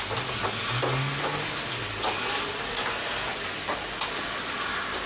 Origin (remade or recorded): recorded